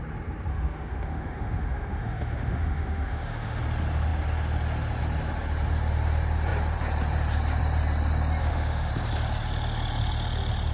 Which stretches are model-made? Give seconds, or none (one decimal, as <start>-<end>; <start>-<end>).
0.5-3.6; 8.4-8.9